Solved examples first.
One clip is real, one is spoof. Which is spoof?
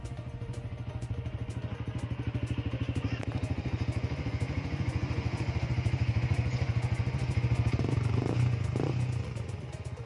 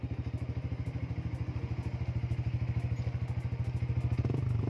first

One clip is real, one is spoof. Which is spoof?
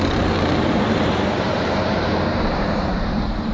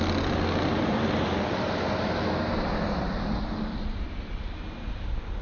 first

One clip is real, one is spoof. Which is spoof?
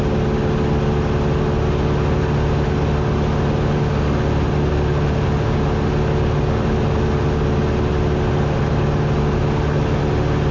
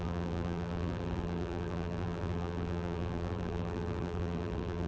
second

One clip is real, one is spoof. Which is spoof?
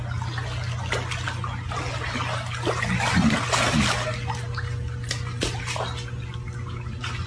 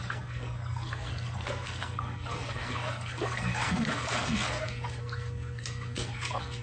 second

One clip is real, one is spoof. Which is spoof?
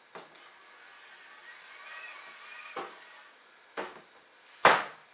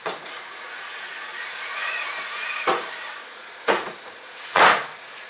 second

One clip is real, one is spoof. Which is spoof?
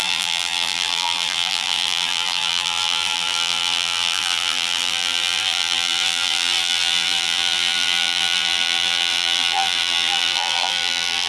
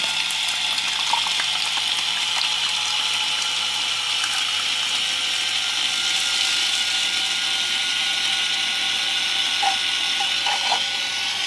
first